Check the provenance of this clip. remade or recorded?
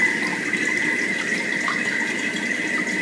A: recorded